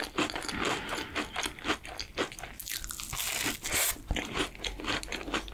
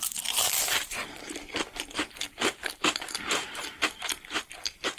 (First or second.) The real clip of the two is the first